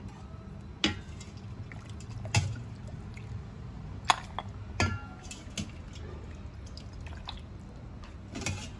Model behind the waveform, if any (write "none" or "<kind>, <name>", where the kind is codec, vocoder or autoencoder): none